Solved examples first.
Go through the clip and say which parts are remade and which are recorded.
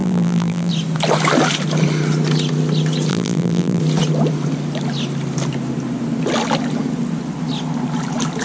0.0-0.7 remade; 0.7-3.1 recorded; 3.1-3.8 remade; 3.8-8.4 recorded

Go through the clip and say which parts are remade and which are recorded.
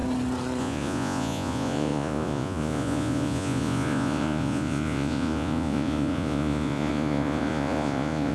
0.0-0.6 recorded; 0.6-8.3 remade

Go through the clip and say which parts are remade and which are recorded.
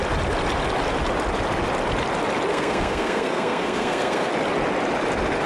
0.0-2.5 recorded; 2.5-4.3 remade; 4.3-5.5 recorded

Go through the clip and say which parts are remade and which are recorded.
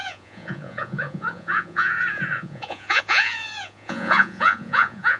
0.0-5.2 remade